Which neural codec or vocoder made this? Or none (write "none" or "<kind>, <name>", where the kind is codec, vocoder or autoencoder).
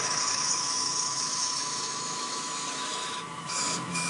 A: autoencoder, DAC-VAE